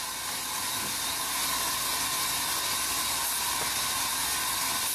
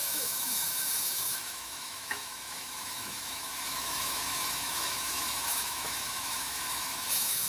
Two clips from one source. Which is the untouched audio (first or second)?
first